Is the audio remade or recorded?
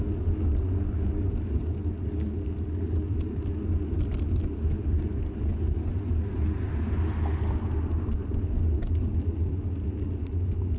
recorded